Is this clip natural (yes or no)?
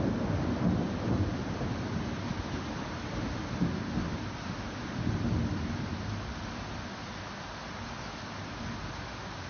yes